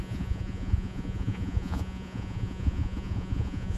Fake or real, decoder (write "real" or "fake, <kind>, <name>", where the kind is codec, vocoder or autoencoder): fake, vocoder, Vocos